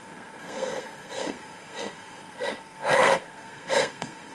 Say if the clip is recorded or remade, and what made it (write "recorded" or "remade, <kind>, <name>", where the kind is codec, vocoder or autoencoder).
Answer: remade, codec, SNAC